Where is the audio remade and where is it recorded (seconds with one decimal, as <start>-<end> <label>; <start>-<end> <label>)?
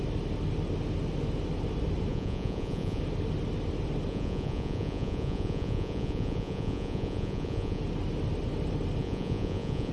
0.0-2.1 recorded; 2.1-3.0 remade; 3.0-4.1 recorded; 4.1-7.8 remade; 7.8-9.0 recorded; 9.0-9.9 remade